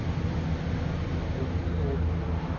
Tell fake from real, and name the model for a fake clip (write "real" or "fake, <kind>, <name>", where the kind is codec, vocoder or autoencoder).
real